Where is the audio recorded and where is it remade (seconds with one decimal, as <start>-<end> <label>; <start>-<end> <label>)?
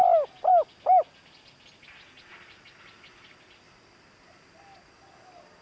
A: 0.0-5.6 recorded